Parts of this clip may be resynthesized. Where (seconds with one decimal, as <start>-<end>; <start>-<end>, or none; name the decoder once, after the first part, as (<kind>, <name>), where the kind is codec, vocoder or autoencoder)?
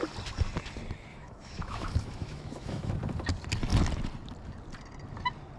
1.1-2.9 (autoencoder, DAC-VAE)